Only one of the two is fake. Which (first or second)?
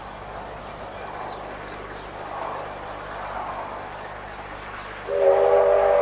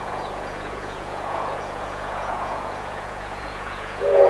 second